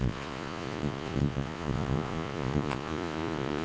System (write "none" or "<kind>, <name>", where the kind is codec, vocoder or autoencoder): vocoder, Vocos